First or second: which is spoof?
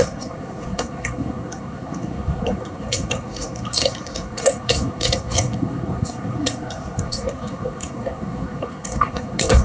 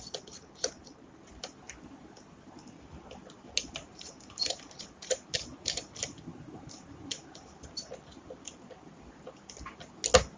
first